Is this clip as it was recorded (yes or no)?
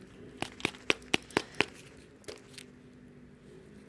yes